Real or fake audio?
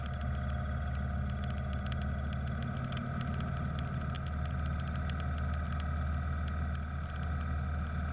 real